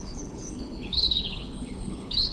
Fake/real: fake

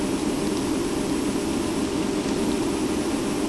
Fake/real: real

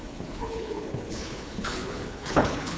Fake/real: fake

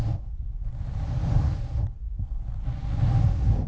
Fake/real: real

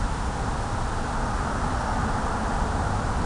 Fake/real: real